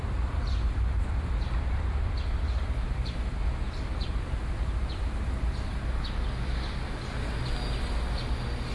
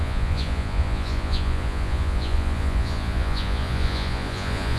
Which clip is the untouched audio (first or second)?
first